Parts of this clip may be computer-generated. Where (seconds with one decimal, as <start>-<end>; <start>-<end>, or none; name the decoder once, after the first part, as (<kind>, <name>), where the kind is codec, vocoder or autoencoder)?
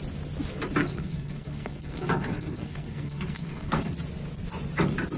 0.8-3.9 (codec, SNAC)